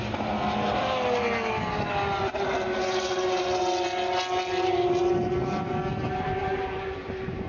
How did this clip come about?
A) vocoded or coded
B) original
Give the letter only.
B